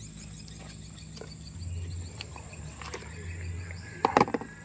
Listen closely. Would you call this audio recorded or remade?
recorded